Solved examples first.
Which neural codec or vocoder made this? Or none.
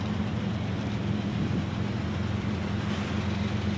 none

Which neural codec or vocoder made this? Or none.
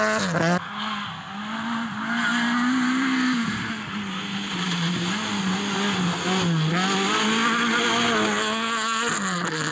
none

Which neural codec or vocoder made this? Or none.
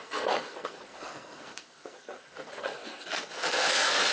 codec, SNAC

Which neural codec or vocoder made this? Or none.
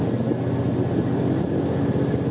none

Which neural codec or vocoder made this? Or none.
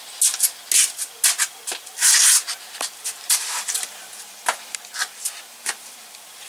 none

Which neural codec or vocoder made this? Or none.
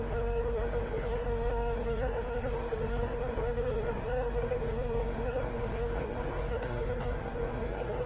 codec, SNAC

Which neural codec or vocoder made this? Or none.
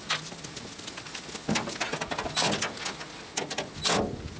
none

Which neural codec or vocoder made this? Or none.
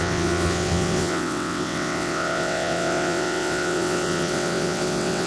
vocoder, WaveNeXt